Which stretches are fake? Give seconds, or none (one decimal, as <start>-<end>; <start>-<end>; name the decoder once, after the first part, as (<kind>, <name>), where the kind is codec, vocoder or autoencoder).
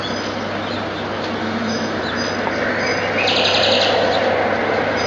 1.4-2.0 (autoencoder, DAC-VAE)